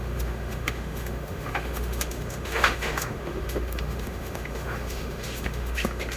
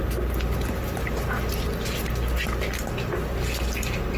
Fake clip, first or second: first